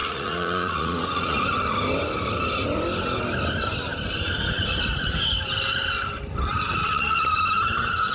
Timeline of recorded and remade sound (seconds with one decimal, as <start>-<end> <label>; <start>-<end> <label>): 0.0-1.4 remade; 1.4-6.8 recorded; 6.8-7.3 remade; 7.3-8.1 recorded